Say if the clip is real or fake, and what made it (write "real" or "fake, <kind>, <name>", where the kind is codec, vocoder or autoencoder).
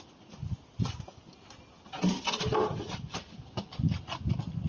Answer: real